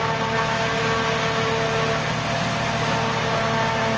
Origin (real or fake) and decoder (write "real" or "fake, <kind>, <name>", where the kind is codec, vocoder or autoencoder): real